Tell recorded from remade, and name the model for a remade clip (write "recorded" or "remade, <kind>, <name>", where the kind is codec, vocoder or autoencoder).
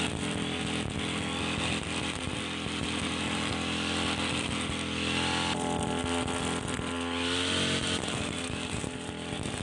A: recorded